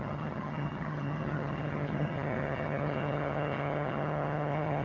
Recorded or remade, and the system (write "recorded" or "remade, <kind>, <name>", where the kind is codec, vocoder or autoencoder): remade, vocoder, HiFi-GAN